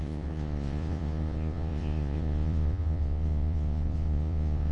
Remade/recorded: remade